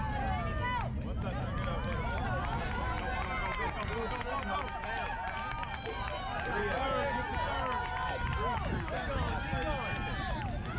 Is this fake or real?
real